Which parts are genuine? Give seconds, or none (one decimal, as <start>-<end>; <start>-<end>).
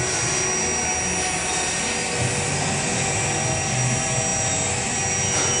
0.0-5.6